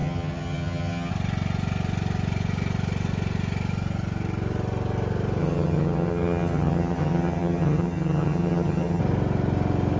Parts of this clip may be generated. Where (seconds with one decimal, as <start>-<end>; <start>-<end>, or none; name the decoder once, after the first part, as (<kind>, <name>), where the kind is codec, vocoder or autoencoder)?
0.0-1.1 (vocoder, HiFi-GAN); 5.4-9.0